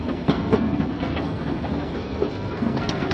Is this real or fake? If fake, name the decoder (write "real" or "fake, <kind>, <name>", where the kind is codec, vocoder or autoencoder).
fake, codec, SNAC